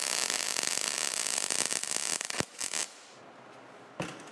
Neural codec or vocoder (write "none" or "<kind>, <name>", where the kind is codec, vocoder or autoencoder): none